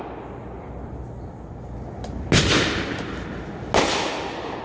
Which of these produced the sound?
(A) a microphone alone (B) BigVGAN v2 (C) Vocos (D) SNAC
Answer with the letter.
A